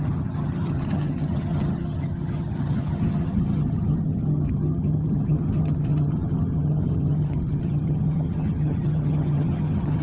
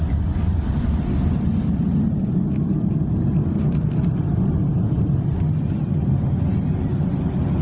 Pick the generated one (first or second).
first